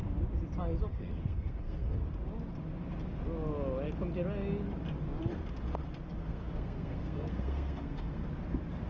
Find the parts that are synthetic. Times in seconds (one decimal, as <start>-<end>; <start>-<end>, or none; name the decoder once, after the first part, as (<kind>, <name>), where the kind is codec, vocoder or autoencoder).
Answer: 0.9-2.0 (codec, SNAC); 6.2-8.3